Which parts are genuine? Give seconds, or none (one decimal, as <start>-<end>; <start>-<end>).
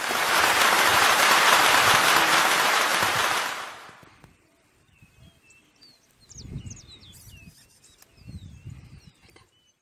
0.0-0.9; 1.8-9.8